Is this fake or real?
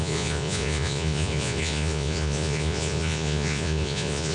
fake